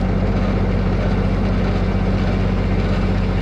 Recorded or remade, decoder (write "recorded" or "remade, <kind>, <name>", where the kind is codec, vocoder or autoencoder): recorded